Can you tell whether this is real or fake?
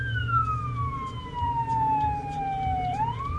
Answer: fake